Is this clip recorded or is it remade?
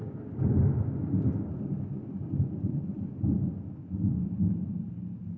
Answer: recorded